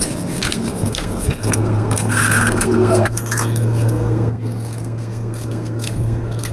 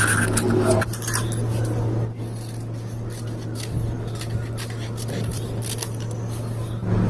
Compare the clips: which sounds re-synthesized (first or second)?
first